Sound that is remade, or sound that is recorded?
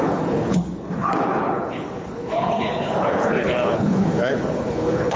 remade